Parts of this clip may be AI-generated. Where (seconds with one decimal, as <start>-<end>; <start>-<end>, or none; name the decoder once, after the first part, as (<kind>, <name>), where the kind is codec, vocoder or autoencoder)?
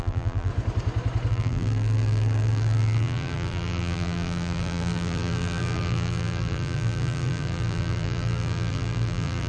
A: 0.0-0.5 (vocoder, BigVGAN v2); 1.3-9.5